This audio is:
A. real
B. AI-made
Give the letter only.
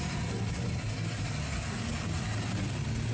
A